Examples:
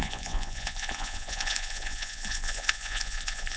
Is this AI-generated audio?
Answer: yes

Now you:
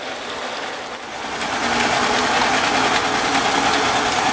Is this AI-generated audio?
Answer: no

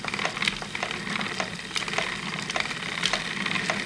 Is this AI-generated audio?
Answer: no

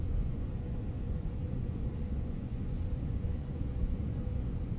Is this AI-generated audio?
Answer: yes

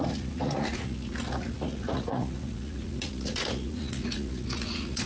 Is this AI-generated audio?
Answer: yes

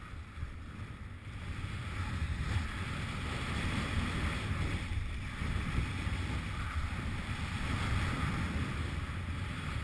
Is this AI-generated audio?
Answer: no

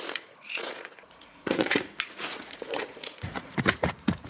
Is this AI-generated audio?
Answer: yes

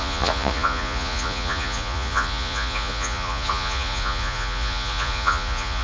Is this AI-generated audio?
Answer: yes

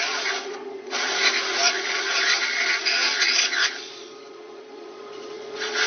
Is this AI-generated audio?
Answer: yes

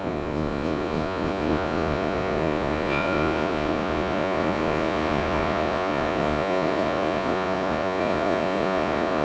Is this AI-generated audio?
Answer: yes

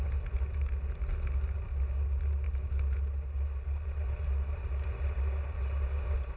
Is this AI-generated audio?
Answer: no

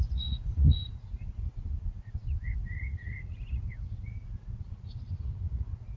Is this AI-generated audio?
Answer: yes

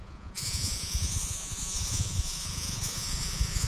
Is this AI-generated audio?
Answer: yes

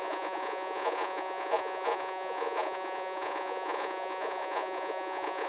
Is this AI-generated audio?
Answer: yes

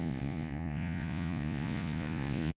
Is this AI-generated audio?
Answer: yes